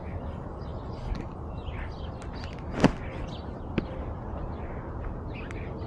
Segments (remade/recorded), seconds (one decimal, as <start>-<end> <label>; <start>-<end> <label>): 0.0-5.9 recorded